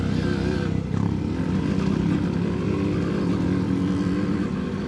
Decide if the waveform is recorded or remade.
recorded